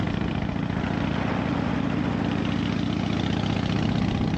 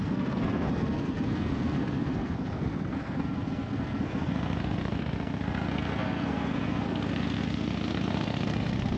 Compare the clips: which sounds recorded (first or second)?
first